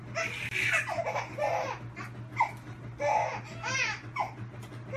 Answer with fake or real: real